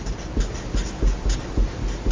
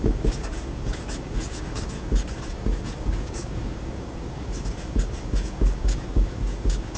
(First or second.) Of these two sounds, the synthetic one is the second